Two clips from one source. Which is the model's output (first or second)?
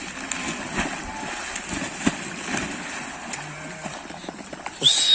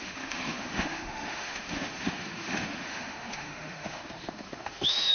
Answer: second